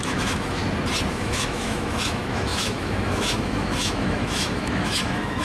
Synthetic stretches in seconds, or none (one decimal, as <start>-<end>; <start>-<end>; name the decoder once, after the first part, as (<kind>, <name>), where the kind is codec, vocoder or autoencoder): 0.0-0.6 (autoencoder, DAC-VAE); 1.1-5.4

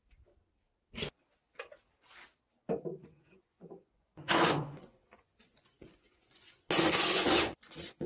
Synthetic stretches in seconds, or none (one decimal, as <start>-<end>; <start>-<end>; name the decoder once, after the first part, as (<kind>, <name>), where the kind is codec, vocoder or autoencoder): 2.9-8.1 (vocoder, Vocos)

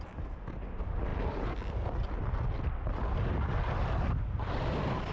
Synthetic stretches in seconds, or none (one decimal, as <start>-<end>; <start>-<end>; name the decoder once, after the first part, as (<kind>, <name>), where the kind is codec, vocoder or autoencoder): none

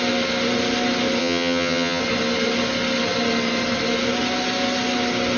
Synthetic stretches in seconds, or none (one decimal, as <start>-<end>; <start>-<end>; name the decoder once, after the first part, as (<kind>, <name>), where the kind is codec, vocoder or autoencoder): 1.2-2.0 (vocoder, HiFi-GAN)

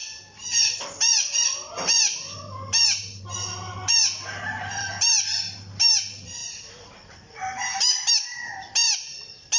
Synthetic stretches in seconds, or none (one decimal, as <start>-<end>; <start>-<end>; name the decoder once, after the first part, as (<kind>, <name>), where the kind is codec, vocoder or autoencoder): none